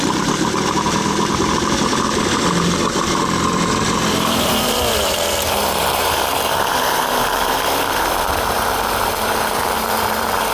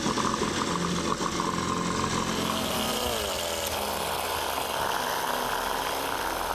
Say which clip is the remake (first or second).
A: first